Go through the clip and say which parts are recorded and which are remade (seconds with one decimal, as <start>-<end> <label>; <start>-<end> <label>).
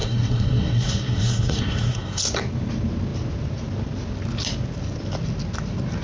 0.0-2.2 remade; 2.2-6.0 recorded